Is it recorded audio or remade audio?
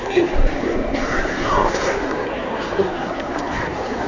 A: remade